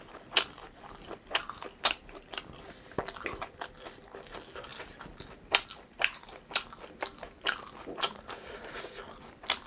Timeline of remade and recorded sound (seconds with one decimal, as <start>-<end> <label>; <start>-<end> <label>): 0.0-4.7 recorded; 4.7-9.7 remade